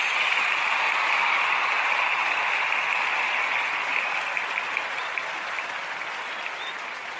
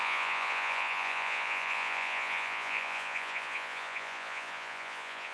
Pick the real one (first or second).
first